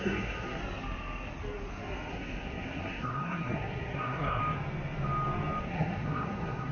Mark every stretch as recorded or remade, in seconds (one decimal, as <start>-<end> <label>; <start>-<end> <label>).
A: 0.0-0.6 remade; 0.6-2.1 recorded; 2.1-4.4 remade; 4.4-5.6 recorded; 5.6-6.7 remade